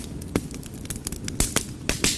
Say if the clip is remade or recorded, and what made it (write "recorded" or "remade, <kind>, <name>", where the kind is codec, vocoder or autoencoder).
recorded